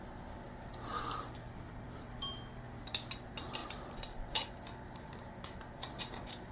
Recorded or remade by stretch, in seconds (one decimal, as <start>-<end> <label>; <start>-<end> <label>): 0.0-0.9 recorded; 0.9-2.5 remade; 2.5-3.6 recorded; 3.6-6.0 remade; 6.0-6.5 recorded